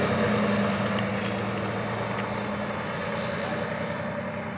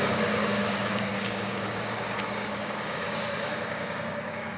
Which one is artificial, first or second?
second